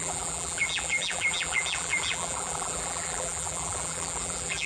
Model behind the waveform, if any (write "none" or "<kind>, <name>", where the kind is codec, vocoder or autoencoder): vocoder, BigVGAN v2